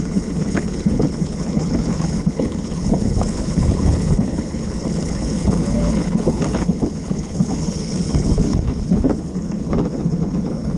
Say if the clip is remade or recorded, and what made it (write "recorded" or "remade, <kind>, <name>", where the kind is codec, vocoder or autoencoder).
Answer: remade, codec, HILCodec